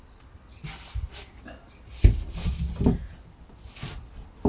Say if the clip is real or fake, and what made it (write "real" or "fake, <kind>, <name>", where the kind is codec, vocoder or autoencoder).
real